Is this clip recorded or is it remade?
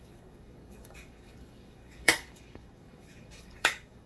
remade